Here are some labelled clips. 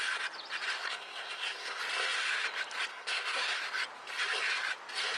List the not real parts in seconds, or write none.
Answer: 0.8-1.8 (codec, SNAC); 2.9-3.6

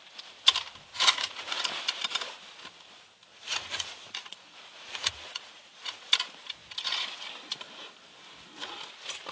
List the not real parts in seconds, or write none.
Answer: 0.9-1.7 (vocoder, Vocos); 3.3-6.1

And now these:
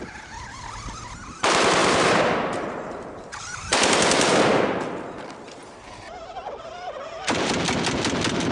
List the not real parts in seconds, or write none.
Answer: 1.8-3.6 (vocoder, BigVGAN v2); 5.6-7.5

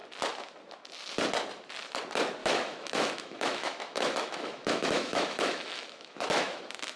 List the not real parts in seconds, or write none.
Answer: 2.4-6.6 (autoencoder, DAC-VAE)

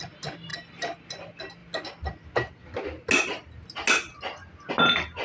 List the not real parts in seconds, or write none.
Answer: none